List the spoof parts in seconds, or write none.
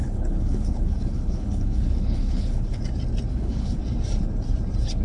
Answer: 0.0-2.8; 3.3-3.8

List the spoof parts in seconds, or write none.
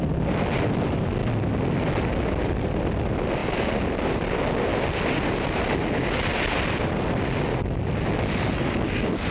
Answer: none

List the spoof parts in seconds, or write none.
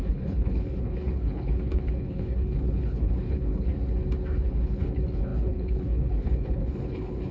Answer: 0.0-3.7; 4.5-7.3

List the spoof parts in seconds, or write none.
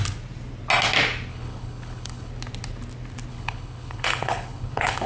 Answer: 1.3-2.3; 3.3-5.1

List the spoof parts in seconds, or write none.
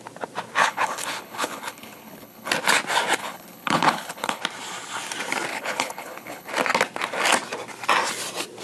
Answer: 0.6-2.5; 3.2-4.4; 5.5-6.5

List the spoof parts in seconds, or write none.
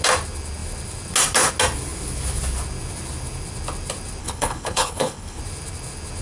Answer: 4.2-5.4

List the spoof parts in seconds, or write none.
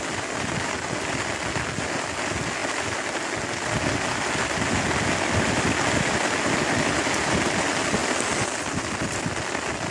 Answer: none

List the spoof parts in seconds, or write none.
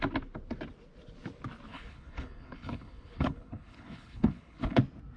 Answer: 1.7-4.8